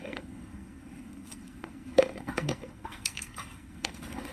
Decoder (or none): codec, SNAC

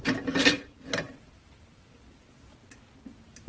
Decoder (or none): none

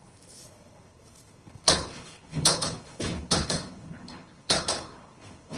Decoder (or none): codec, HILCodec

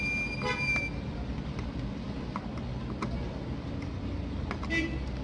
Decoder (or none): none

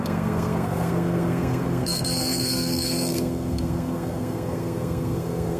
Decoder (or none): codec, SNAC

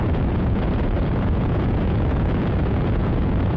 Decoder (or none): vocoder, Vocos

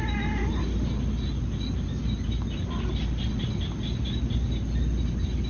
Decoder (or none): none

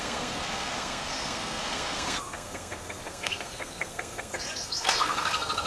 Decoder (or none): codec, SNAC